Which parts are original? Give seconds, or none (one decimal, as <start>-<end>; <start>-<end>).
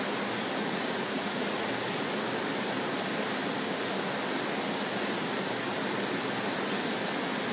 0.0-0.6; 1.7-7.5